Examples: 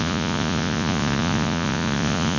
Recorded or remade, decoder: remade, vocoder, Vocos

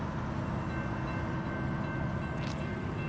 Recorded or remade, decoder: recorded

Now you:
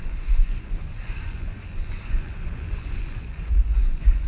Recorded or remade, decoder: remade, vocoder, Vocos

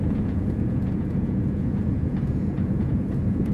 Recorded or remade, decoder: remade, vocoder, Vocos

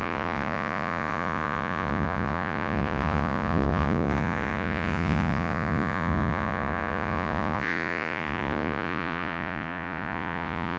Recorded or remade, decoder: remade, vocoder, Vocos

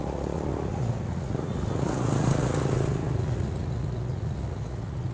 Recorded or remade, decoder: remade, vocoder, Vocos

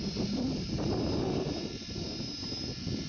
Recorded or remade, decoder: recorded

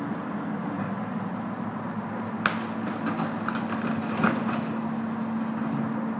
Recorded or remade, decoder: recorded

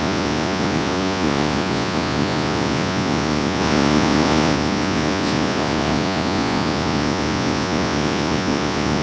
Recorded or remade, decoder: remade, vocoder, Vocos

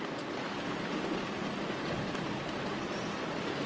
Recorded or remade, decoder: recorded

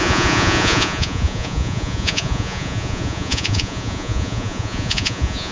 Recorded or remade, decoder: remade, vocoder, Vocos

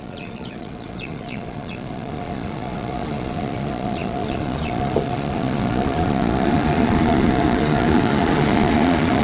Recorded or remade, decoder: remade, vocoder, Vocos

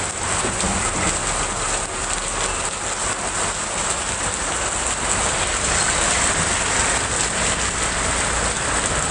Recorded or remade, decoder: recorded